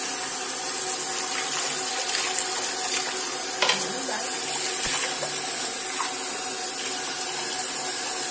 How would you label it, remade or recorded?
recorded